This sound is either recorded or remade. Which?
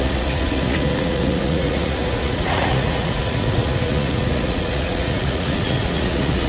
remade